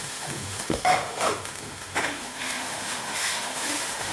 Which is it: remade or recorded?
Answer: remade